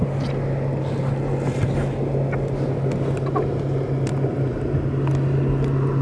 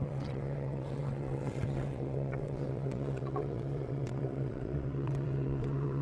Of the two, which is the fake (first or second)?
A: second